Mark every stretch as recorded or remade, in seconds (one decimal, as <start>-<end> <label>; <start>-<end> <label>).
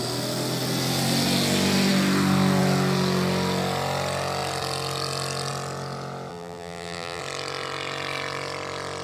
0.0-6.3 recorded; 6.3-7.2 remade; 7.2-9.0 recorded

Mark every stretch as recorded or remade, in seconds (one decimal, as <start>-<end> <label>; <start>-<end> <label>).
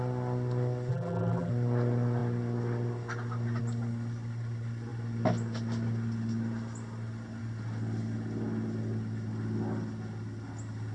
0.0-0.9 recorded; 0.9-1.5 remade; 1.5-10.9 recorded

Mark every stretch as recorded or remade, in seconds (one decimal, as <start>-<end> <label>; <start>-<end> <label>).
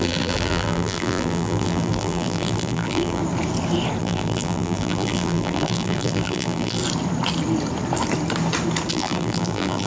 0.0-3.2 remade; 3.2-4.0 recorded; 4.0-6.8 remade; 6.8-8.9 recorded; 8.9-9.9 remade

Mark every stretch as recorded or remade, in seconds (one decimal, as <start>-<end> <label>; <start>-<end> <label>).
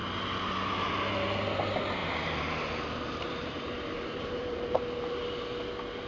0.0-2.0 recorded; 2.0-5.0 remade; 5.0-6.1 recorded